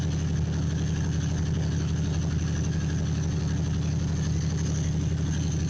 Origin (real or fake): real